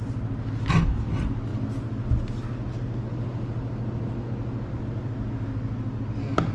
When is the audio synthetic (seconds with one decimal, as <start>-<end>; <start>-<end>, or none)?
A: none